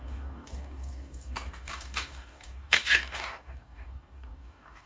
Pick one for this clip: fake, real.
fake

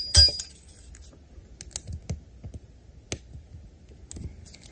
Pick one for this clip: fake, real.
real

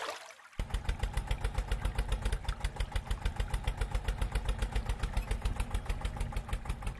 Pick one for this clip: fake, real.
real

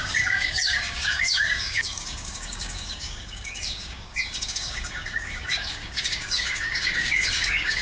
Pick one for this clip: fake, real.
fake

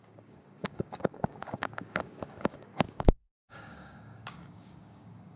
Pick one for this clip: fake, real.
fake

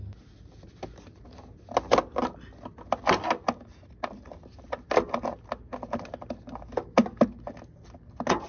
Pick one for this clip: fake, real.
real